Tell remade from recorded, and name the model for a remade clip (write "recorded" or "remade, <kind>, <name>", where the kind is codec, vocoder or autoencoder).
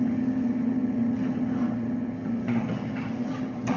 remade, vocoder, HiFi-GAN